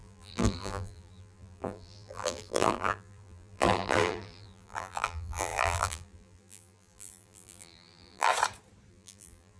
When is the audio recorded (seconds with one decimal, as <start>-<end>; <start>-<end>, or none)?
8.3-8.9